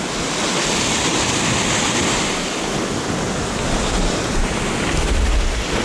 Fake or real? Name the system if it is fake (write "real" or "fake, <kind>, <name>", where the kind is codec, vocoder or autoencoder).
real